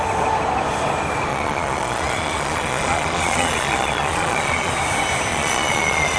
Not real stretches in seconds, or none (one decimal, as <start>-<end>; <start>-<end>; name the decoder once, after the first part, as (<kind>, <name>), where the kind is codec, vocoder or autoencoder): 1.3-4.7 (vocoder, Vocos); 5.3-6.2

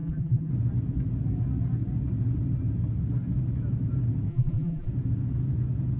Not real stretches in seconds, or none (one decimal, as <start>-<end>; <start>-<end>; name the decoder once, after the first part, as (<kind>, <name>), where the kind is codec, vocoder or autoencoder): 0.0-0.5 (vocoder, BigVGAN v2); 4.3-4.9

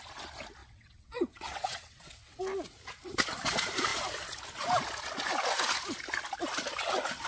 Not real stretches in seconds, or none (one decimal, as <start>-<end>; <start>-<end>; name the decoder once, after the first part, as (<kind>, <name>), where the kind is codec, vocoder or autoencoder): 0.6-2.4 (vocoder, WaveNeXt)

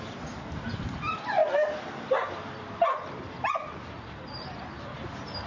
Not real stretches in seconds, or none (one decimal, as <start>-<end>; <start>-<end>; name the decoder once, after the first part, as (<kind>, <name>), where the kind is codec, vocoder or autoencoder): none

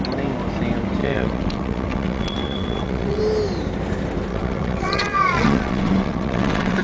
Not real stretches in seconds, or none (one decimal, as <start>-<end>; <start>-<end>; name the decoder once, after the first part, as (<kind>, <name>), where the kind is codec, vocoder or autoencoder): 1.0-3.2 (vocoder, WaveNeXt); 4.3-6.8

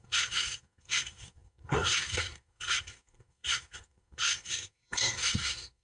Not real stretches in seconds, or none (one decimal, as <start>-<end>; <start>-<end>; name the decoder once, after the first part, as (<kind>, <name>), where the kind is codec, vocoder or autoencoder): 0.0-5.8 (codec, SNAC)

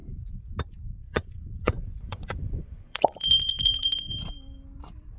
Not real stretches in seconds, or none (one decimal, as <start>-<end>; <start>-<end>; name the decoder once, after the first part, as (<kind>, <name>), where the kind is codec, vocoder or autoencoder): 0.0-0.6 (vocoder, Vocos); 1.0-4.1

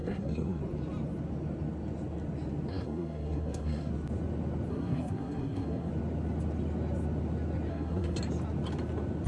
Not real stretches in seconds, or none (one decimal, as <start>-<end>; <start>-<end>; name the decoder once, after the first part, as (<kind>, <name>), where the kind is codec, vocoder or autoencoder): 0.0-0.6 (codec, SNAC); 2.7-3.9; 4.7-5.9; 7.7-8.2